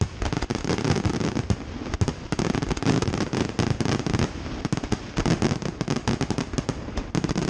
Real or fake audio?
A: real